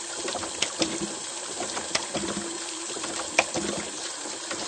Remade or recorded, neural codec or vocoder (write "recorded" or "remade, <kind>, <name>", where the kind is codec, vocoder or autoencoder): recorded